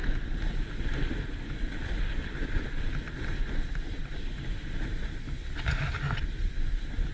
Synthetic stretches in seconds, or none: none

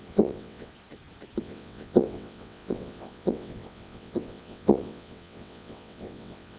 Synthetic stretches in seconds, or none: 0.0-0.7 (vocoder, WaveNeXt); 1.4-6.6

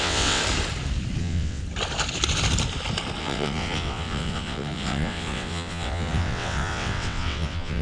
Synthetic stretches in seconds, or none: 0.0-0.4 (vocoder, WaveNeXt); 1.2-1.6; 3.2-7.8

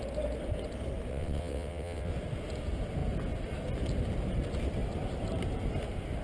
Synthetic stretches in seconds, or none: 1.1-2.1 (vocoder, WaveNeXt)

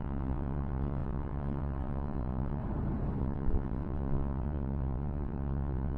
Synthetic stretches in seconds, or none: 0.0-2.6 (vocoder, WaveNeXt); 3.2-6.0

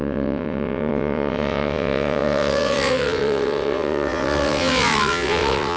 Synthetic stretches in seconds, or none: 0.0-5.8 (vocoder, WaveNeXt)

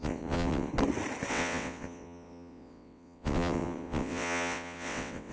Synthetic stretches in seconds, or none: 0.0-0.7 (vocoder, WaveNeXt); 1.3-5.3